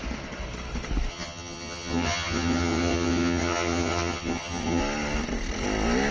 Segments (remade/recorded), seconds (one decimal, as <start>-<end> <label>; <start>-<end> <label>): 0.0-1.1 recorded; 1.1-4.8 remade; 4.8-6.1 recorded